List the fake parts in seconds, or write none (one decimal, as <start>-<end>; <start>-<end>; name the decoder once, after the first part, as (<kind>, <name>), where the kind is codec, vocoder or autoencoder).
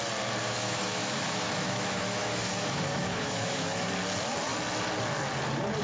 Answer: 0.4-3.9 (autoencoder, DAC-VAE)